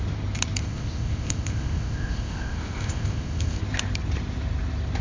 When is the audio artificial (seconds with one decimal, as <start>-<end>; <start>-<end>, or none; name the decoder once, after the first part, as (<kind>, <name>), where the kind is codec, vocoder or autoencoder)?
0.6-3.6 (codec, ZipCodec)